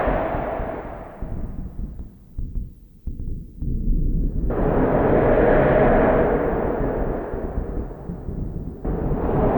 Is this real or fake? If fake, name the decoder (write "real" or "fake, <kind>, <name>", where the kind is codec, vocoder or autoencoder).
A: real